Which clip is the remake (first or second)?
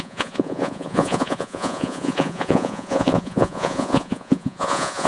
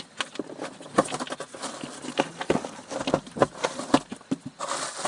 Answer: first